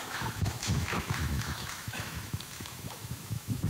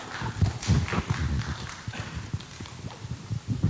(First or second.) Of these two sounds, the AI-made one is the first